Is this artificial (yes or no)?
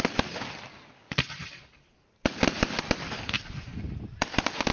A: no